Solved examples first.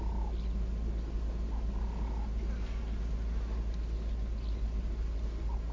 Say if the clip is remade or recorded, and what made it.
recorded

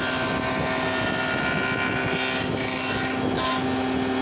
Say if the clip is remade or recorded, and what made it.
recorded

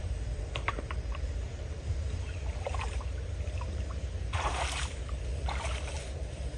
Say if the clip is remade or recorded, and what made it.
remade, vocoder, BigVGAN v2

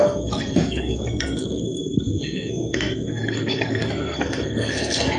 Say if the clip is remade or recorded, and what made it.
remade, codec, SNAC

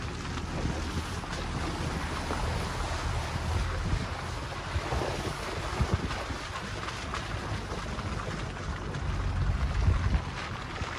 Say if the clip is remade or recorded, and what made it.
recorded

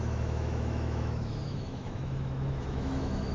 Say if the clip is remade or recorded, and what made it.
remade, autoencoder, DAC-VAE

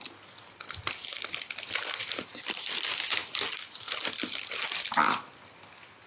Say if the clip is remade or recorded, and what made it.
recorded